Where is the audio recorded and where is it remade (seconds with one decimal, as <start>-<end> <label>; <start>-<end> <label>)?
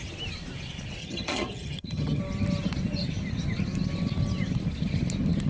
0.0-1.0 recorded; 1.0-2.2 remade; 2.2-5.5 recorded